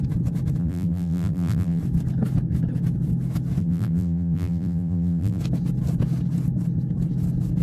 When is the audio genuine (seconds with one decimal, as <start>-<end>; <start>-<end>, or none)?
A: 0.0-0.6; 1.8-3.6; 5.4-7.6